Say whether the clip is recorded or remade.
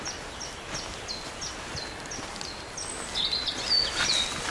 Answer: recorded